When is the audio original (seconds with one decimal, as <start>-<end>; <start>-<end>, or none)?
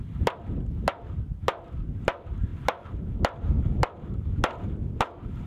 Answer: 0.0-5.5